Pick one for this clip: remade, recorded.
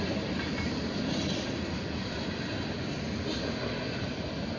recorded